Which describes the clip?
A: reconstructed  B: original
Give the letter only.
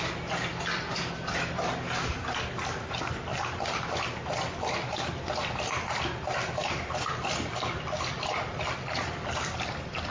B